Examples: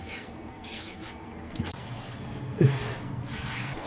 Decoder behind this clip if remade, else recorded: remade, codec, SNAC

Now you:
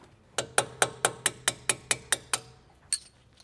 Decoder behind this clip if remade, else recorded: recorded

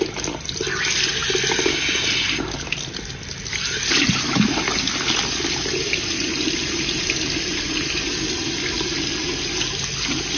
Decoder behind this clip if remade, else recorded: recorded